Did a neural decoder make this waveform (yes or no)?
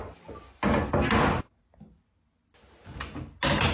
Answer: no